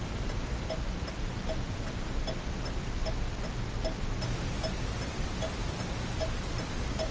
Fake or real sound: real